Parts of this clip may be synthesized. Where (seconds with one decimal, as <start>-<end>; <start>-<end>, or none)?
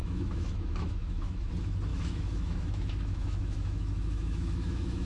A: 0.0-1.5; 1.9-5.1